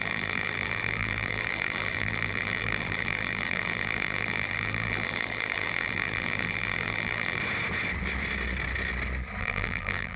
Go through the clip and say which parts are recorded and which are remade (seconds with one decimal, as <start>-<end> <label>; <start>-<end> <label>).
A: 0.0-7.4 remade; 7.4-9.4 recorded; 9.4-10.2 remade